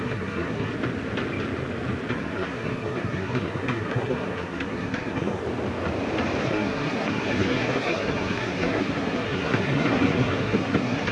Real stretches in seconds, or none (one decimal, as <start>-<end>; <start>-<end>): 0.7-2.1; 5.4-6.4